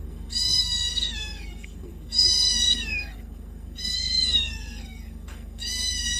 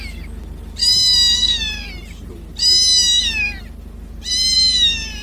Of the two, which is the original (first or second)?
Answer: second